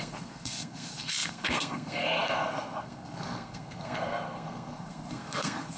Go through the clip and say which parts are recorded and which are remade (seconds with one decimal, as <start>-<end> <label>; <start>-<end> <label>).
0.0-5.8 remade